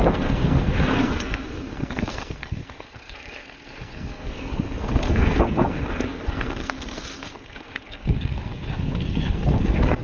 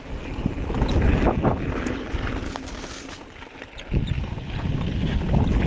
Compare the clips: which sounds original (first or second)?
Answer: second